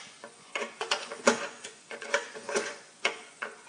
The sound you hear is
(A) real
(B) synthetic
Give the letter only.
B